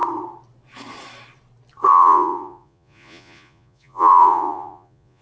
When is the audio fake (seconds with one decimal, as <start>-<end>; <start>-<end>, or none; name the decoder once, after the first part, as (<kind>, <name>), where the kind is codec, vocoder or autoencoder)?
1.9-5.2 (vocoder, Vocos)